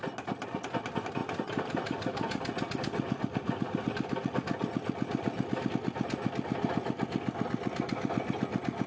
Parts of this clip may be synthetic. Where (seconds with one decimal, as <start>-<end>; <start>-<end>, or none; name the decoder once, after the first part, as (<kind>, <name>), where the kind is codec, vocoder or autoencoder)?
none

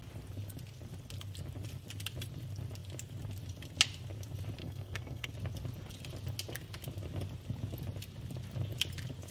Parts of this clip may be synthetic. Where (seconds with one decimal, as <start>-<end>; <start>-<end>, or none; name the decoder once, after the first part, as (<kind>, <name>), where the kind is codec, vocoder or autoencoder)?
4.6-5.3 (codec, SNAC)

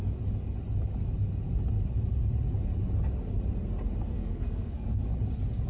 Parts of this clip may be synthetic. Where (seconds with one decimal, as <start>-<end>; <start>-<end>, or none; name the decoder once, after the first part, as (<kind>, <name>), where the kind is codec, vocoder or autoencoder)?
4.1-5.0 (codec, SNAC)

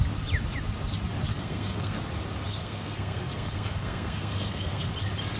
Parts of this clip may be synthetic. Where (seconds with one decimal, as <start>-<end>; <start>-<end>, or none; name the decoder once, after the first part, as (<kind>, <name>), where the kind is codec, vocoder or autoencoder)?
1.3-2.0 (codec, SNAC); 2.6-4.9

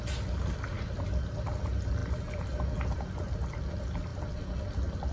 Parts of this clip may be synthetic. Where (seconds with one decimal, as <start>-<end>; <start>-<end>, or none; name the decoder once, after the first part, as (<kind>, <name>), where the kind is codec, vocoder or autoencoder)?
none

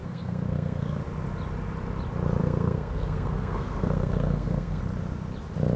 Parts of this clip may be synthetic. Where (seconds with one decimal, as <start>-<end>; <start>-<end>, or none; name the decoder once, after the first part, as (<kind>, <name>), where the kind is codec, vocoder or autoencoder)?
0.0-1.0 (codec, SNAC); 2.4-4.8

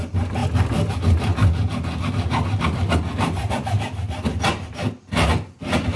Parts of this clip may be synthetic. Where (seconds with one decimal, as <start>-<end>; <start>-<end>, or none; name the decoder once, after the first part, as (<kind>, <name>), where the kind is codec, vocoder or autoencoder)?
none

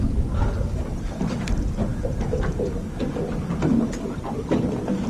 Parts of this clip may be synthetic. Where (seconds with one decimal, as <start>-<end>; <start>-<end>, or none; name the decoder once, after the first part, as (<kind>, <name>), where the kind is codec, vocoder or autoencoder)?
none